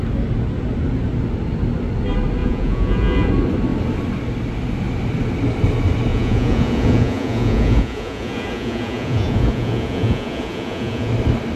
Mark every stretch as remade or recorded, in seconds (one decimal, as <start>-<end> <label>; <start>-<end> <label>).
0.0-2.4 recorded; 2.4-3.3 remade; 3.3-6.1 recorded; 6.1-11.1 remade; 11.1-11.6 recorded